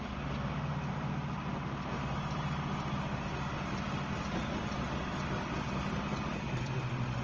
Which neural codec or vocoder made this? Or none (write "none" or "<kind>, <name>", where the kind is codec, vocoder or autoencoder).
none